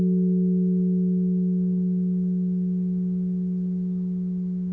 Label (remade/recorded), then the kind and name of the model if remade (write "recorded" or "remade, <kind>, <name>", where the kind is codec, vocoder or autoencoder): recorded